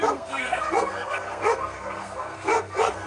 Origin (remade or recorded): remade